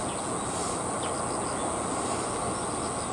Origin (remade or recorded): recorded